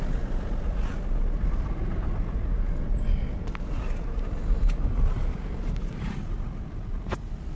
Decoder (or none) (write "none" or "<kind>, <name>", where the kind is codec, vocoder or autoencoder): none